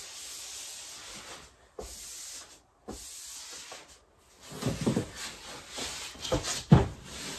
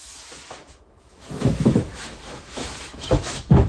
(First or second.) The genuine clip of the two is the first